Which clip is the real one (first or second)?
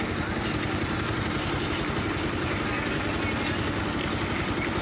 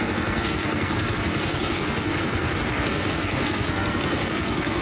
first